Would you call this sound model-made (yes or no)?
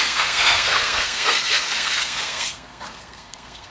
yes